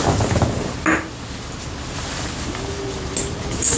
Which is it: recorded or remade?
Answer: recorded